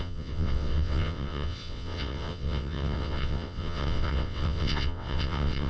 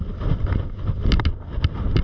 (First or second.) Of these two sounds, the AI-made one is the first